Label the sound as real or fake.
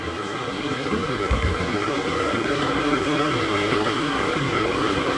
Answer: fake